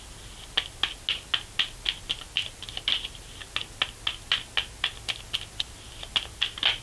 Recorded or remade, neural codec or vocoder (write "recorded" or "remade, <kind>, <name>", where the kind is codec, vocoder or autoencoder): recorded